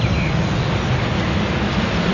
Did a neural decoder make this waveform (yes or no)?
no